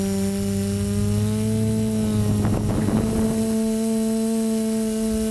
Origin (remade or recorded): recorded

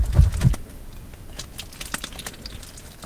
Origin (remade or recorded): recorded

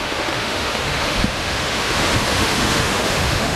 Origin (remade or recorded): remade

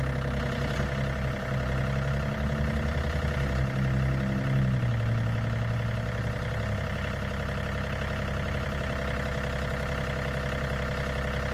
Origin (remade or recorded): recorded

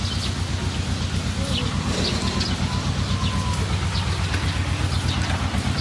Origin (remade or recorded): recorded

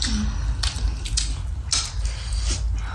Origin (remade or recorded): recorded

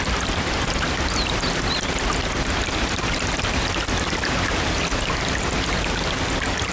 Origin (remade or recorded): recorded